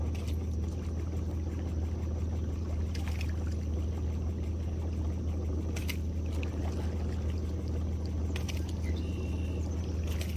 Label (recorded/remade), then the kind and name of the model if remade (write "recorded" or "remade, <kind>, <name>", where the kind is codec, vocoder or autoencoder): recorded